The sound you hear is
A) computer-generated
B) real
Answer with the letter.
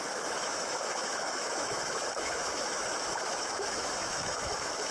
A